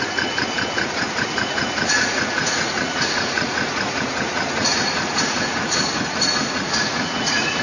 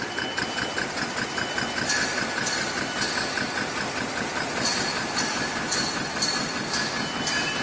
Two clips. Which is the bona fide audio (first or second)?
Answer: second